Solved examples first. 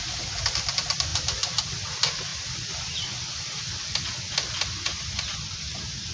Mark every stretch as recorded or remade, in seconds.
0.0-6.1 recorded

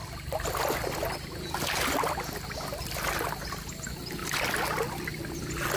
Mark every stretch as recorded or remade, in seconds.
0.0-4.2 recorded; 4.2-5.8 remade

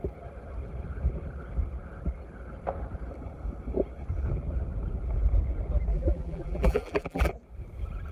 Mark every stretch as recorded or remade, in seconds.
0.0-5.9 recorded; 5.9-7.3 remade; 7.3-8.1 recorded

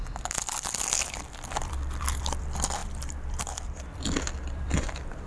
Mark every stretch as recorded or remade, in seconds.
0.0-5.3 remade

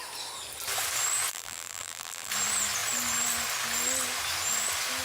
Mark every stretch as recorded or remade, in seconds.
0.0-1.3 recorded; 1.3-2.3 remade; 2.3-5.0 recorded